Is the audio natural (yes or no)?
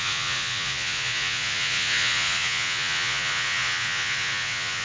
no